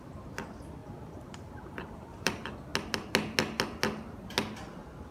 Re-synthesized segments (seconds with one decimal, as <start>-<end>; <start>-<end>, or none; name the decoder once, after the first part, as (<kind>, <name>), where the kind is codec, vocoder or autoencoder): 0.8-2.3 (vocoder, BigVGAN v2)